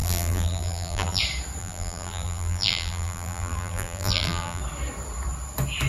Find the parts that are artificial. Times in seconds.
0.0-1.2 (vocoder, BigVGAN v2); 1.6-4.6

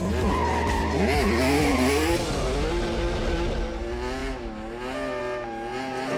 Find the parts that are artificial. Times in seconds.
none